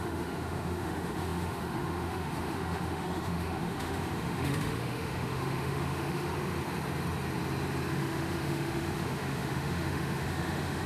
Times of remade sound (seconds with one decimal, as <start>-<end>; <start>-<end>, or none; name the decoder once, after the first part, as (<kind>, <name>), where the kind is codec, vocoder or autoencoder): 0.0-6.3 (autoencoder, DAC-VAE); 7.9-10.9